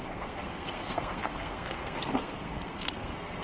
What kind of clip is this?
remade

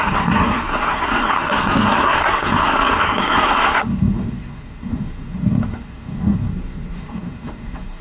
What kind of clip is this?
remade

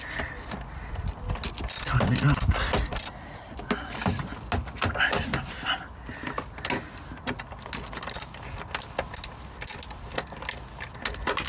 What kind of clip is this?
recorded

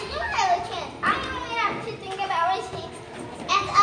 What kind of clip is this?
recorded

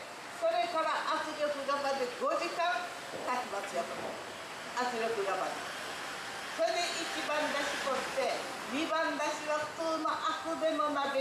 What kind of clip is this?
recorded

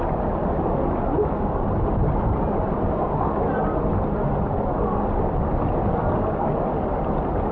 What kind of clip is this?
recorded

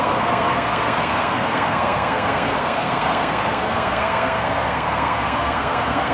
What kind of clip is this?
remade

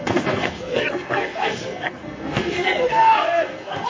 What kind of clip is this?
remade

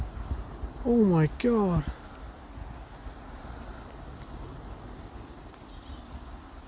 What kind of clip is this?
recorded